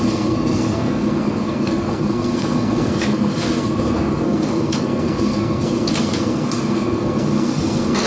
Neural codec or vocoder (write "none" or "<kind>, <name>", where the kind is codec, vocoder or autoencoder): codec, SNAC